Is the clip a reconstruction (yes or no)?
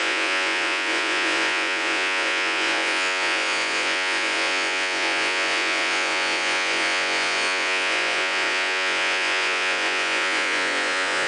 yes